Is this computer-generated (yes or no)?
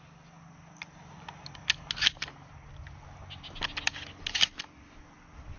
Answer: no